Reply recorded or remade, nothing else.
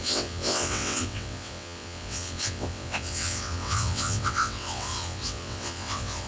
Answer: remade